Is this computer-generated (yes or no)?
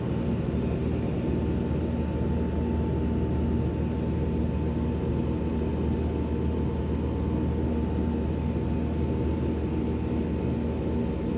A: no